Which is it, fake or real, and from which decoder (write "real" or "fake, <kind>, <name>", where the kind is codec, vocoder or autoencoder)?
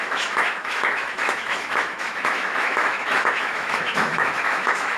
fake, autoencoder, DAC-VAE